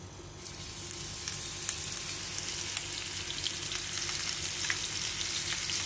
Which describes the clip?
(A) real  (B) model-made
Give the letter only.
A